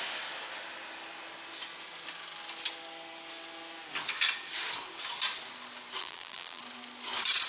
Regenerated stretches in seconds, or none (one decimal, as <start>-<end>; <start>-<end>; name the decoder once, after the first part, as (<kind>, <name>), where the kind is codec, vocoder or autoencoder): 6.0-6.6 (vocoder, BigVGAN v2)